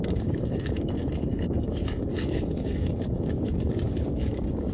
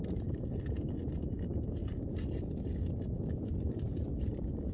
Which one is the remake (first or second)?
first